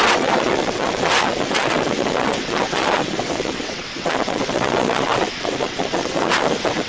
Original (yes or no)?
no